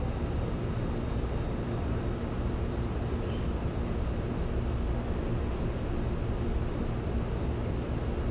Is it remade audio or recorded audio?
recorded